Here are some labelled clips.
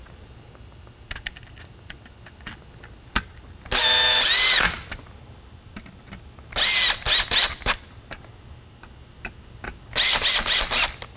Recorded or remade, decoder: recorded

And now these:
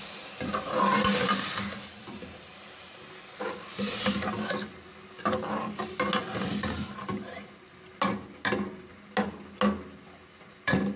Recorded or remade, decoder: recorded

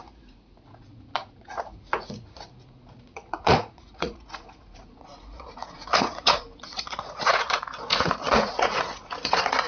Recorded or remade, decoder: remade, vocoder, Vocos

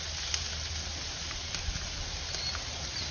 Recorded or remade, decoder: recorded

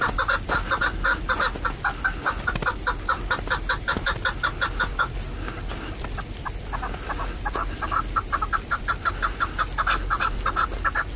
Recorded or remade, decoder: recorded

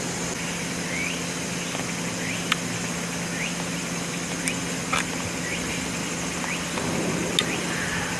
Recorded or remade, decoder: recorded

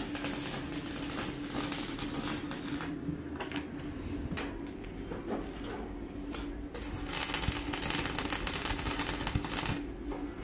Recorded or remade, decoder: recorded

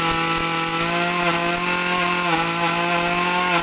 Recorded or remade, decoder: recorded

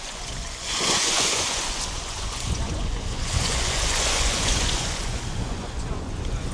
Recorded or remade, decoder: remade, vocoder, Vocos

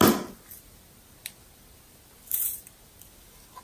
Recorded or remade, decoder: recorded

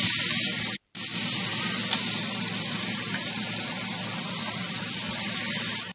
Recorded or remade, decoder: recorded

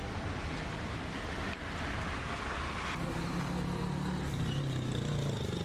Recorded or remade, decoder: recorded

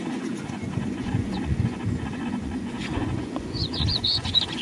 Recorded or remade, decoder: remade, vocoder, Vocos